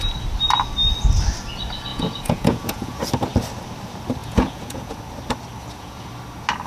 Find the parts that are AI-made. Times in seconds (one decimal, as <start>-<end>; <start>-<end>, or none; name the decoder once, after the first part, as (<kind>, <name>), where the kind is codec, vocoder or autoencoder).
1.9-3.0 (vocoder, Vocos); 4.2-5.0; 5.6-6.1